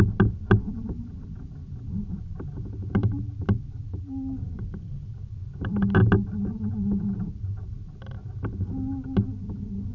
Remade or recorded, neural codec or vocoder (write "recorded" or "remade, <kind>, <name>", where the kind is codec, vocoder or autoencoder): recorded